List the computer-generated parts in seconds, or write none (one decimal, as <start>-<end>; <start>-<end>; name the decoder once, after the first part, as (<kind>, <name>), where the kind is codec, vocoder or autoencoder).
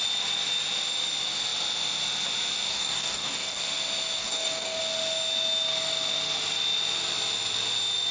2.7-3.6 (codec, DAC); 4.2-4.8